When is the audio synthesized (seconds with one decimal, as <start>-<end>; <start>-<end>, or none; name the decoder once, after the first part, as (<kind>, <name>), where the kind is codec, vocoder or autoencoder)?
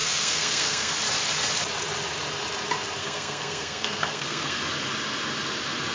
0.0-0.9 (codec, SNAC); 3.0-4.6